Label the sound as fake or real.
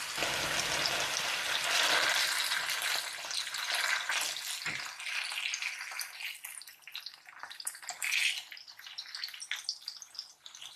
real